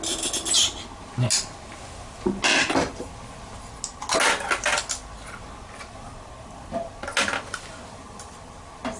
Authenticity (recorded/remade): recorded